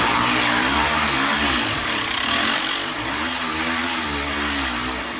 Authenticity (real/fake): real